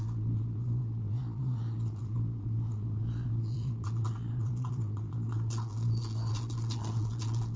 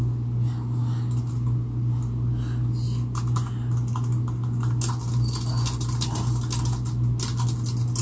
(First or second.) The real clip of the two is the second